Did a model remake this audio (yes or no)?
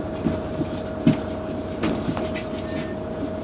no